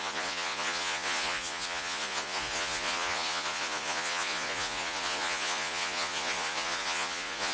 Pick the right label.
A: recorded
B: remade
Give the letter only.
B